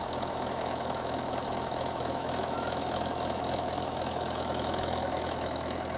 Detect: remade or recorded remade